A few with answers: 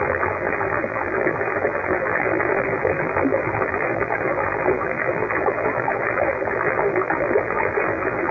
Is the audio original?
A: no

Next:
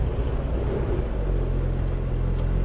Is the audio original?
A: yes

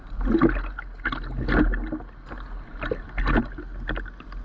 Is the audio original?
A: yes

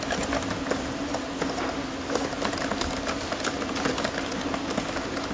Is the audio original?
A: yes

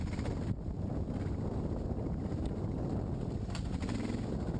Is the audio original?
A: yes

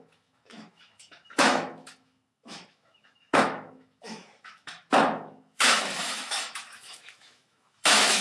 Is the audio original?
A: no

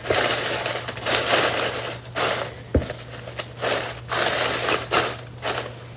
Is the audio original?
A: yes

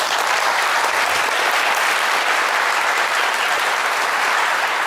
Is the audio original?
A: yes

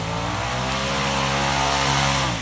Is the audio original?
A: yes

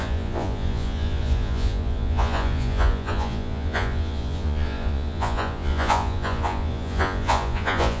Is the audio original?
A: no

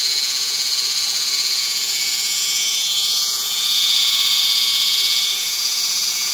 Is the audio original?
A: no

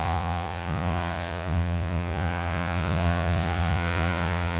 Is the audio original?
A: no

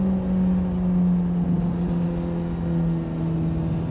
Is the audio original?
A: yes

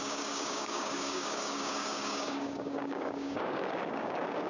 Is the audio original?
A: no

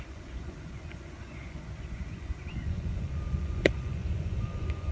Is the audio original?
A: no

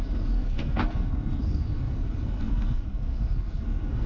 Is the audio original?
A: no